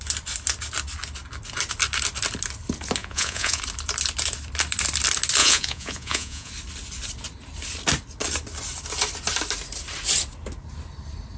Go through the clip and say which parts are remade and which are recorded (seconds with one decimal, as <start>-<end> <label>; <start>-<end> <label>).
0.0-3.0 recorded; 3.0-3.6 remade; 3.6-5.4 recorded; 5.4-6.5 remade; 6.5-11.4 recorded